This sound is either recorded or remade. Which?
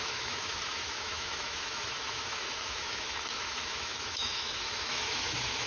remade